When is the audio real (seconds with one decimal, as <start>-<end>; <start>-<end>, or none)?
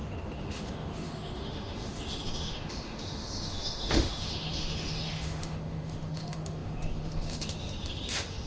none